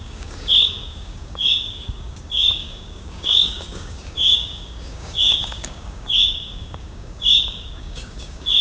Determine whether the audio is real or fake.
fake